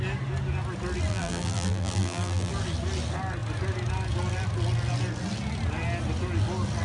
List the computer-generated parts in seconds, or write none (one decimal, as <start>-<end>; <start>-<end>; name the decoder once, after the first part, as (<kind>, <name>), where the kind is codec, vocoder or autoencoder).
1.1-2.5 (vocoder, BigVGAN v2)